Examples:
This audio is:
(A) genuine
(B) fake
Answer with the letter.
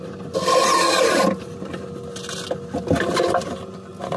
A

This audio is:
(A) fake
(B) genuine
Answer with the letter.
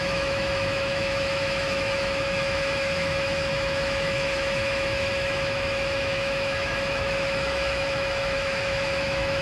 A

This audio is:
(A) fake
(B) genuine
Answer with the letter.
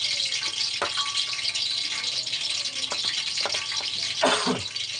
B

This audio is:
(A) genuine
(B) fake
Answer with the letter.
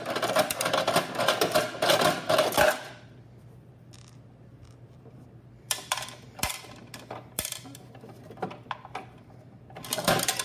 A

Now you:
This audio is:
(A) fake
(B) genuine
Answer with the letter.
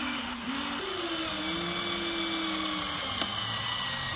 B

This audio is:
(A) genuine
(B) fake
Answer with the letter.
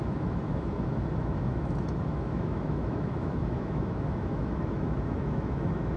B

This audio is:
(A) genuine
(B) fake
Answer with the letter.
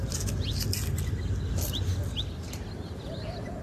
A